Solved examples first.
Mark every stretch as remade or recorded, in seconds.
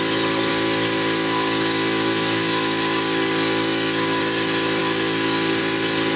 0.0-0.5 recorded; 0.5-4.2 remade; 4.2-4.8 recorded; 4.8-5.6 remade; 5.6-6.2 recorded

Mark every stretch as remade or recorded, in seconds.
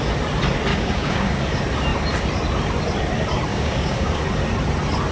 0.0-0.7 recorded; 0.7-1.4 remade; 1.4-3.5 recorded; 3.5-4.2 remade; 4.2-5.1 recorded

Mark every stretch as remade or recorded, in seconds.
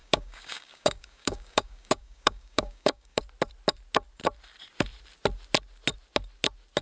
0.0-3.2 remade; 3.2-6.8 recorded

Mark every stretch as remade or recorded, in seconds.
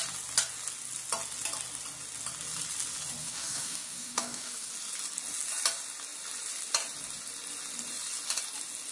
0.0-3.2 recorded; 3.2-4.7 remade; 4.7-8.9 recorded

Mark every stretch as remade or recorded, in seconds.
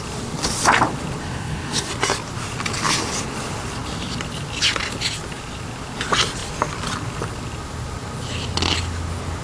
0.0-1.2 recorded; 1.2-1.9 remade; 1.9-9.4 recorded